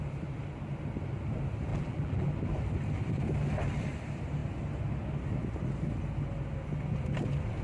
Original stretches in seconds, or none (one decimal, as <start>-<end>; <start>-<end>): 0.0-1.7; 2.3-7.6